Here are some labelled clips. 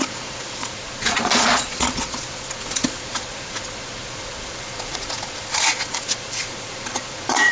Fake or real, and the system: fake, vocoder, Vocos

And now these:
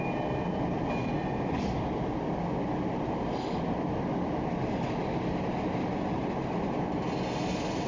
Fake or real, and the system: real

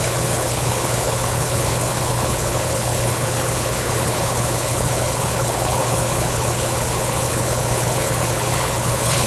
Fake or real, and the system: fake, codec, HILCodec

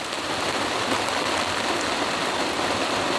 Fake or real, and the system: real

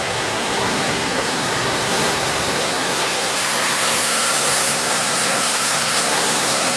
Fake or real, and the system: fake, codec, SNAC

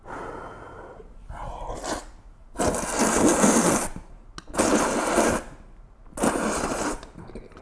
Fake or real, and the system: real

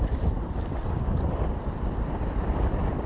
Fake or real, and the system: fake, vocoder, BigVGAN v2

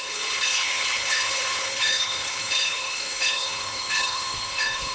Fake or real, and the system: fake, codec, HILCodec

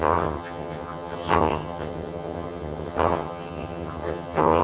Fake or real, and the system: fake, vocoder, HiFi-GAN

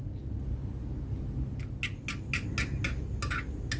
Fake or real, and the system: real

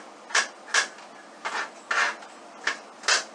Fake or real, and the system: real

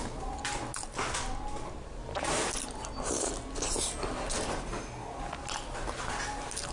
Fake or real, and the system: real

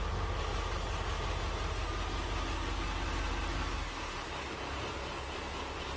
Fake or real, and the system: real